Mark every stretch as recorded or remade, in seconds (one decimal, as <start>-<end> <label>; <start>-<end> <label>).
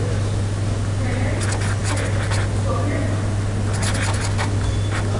0.0-5.2 recorded